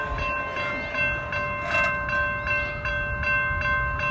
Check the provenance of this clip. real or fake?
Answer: real